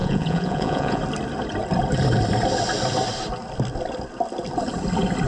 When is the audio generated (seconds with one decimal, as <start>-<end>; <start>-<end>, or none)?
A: 0.0-1.0